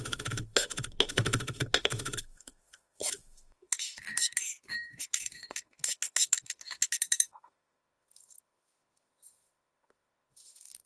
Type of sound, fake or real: fake